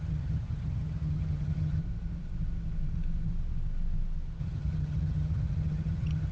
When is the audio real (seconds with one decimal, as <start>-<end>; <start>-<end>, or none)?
1.8-4.4